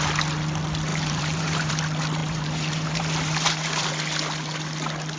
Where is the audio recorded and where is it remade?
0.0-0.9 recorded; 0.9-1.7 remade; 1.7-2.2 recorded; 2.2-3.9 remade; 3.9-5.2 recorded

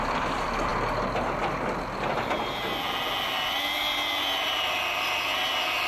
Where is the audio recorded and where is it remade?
0.0-5.9 recorded

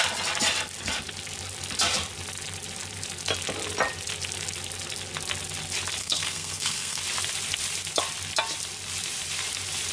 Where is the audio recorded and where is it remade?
0.0-6.0 recorded; 6.0-7.0 remade; 7.0-9.9 recorded

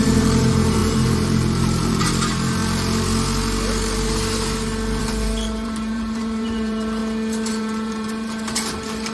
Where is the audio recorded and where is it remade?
0.0-2.6 remade; 2.6-5.0 recorded; 5.0-7.0 remade; 7.0-7.5 recorded; 7.5-9.1 remade

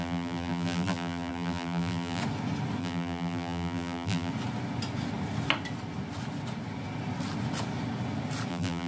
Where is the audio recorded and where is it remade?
0.0-2.2 remade; 2.2-2.8 recorded; 2.8-4.3 remade; 4.3-8.5 recorded; 8.5-8.9 remade

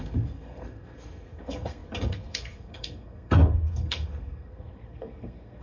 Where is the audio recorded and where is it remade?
0.0-5.6 remade